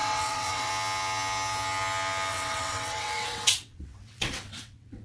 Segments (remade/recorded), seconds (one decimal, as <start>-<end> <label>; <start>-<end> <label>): 0.0-0.7 remade; 0.7-2.3 recorded; 2.3-5.0 remade